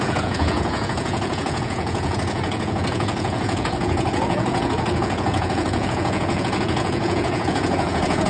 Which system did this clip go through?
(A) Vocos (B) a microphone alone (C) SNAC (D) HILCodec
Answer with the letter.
A